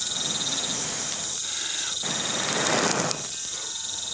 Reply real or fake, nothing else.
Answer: real